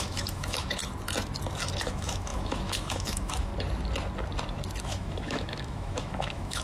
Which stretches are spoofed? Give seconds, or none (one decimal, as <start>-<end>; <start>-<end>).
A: 0.0-0.8; 1.8-3.5; 4.8-6.6

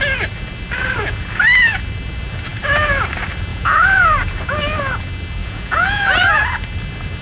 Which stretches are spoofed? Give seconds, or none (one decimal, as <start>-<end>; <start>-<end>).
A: 3.5-4.0; 5.4-6.4